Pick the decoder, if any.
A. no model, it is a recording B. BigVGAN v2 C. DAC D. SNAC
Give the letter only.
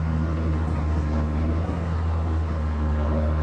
D